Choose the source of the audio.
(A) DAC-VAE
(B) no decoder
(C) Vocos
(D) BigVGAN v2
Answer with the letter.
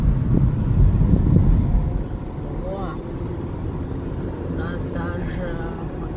B